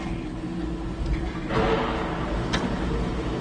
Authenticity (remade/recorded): recorded